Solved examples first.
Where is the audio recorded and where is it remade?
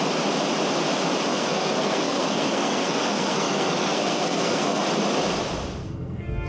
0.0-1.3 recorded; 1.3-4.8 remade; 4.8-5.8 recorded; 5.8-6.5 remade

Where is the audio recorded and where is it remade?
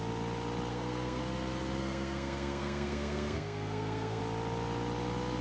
0.0-0.7 recorded; 0.7-1.2 remade; 1.2-1.8 recorded; 1.8-4.2 remade; 4.2-5.4 recorded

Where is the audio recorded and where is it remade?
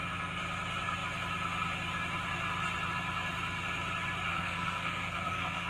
0.0-4.3 recorded; 4.3-5.7 remade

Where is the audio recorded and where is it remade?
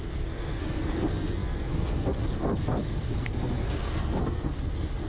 0.0-5.1 remade